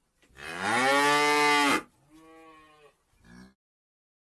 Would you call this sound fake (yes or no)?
no